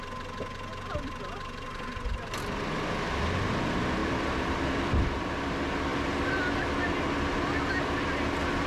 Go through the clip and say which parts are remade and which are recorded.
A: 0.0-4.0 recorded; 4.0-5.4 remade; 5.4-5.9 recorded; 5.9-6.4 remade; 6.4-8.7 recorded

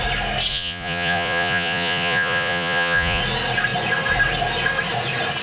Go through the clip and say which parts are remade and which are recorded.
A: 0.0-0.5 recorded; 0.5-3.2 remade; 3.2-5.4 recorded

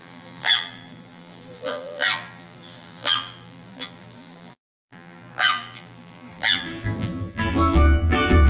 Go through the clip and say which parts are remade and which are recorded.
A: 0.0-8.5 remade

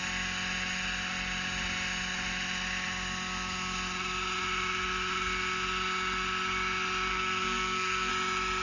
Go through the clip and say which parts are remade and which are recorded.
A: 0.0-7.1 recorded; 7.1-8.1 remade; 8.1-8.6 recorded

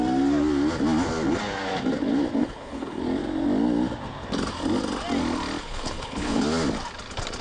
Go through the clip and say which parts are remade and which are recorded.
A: 0.0-2.4 recorded; 2.4-3.0 remade; 3.0-5.6 recorded; 5.6-6.4 remade; 6.4-7.4 recorded